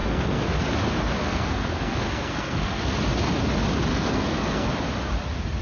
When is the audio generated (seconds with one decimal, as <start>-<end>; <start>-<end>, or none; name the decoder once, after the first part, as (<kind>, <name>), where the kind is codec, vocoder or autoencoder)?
0.0-0.6 (codec, SNAC); 1.2-2.8; 3.9-4.7